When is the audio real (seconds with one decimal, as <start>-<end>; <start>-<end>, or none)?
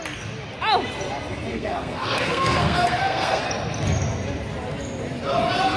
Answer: 0.0-1.5; 3.4-5.8